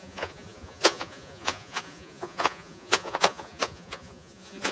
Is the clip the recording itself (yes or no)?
no